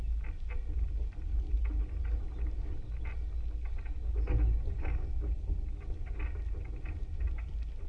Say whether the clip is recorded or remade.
recorded